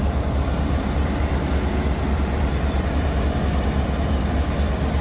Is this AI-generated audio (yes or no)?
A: no